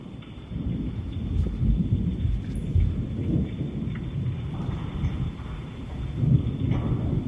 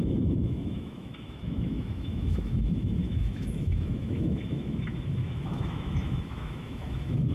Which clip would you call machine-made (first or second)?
second